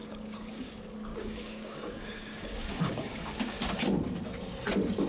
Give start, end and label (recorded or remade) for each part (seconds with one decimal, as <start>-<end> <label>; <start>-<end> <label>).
0.0-0.7 remade; 0.7-1.1 recorded; 1.1-3.6 remade; 3.6-5.1 recorded